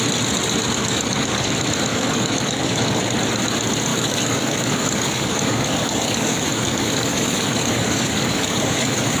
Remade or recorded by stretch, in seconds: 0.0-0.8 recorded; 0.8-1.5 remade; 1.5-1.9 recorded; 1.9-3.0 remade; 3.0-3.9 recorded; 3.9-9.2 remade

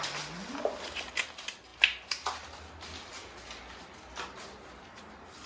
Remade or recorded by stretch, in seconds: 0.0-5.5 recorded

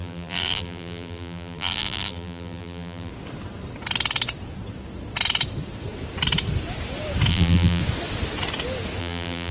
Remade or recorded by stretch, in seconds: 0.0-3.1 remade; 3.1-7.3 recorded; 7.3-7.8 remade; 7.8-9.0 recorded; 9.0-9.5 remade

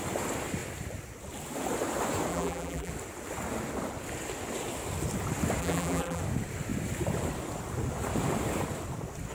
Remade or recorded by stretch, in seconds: 0.0-2.3 recorded; 2.3-2.9 remade; 2.9-5.6 recorded; 5.6-6.2 remade; 6.2-9.3 recorded

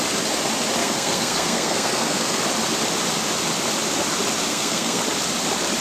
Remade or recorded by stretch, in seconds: 0.0-0.8 recorded; 0.8-2.4 remade; 2.4-4.5 recorded; 4.5-5.0 remade; 5.0-5.8 recorded